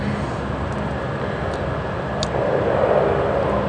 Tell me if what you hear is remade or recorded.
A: recorded